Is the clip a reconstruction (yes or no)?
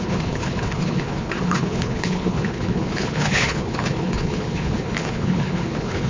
yes